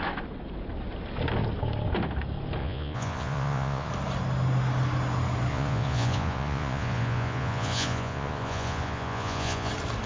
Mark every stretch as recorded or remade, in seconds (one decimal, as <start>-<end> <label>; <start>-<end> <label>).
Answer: 0.0-2.6 recorded; 2.6-3.9 remade; 3.9-5.5 recorded; 5.5-9.7 remade; 9.7-10.1 recorded